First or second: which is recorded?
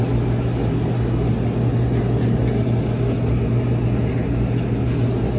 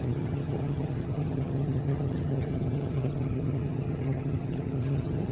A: first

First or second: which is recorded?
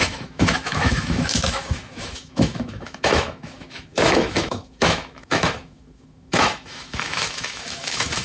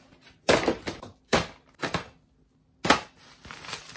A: second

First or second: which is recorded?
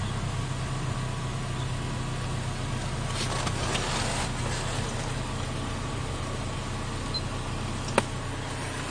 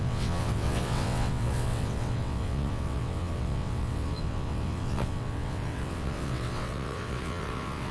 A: first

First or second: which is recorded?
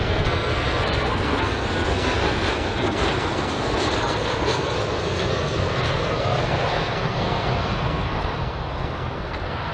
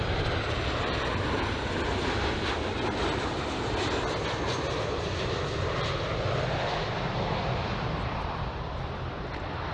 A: second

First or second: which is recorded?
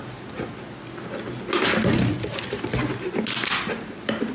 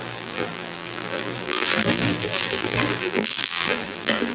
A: first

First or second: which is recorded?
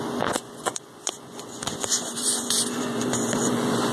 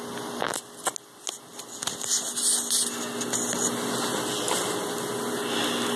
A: second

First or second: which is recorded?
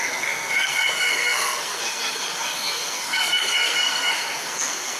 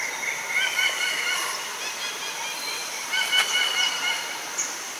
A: second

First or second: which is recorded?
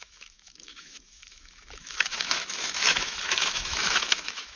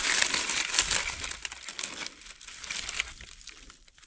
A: second